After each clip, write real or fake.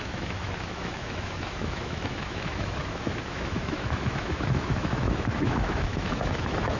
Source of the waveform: fake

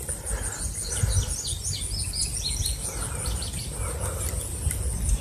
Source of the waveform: real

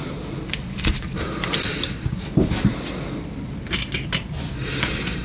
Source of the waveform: real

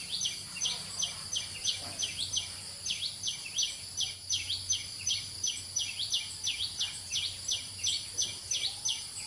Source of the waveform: real